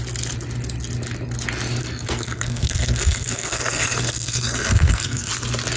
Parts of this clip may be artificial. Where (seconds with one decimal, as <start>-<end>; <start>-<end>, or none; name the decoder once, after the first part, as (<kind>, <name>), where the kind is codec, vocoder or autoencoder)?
1.8-5.3 (codec, SNAC)